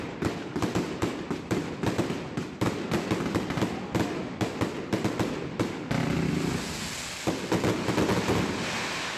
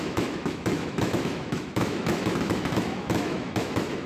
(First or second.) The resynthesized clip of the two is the second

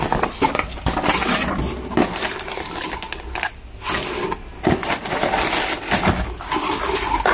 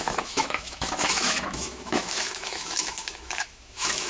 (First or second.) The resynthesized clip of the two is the second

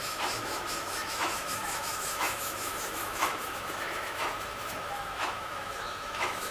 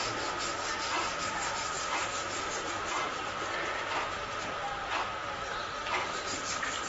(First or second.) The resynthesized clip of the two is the first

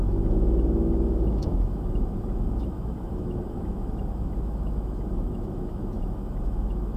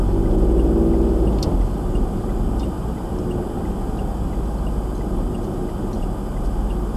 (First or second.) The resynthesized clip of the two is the first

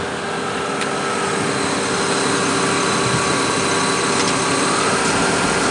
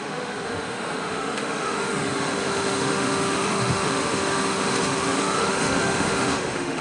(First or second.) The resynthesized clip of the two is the second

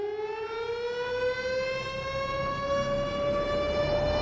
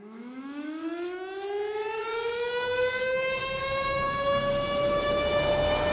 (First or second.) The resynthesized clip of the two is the second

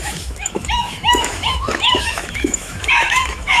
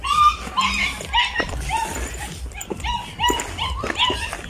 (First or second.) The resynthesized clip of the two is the first